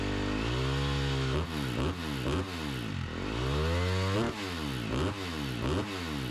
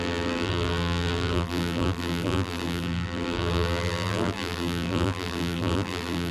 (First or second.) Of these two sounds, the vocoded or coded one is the second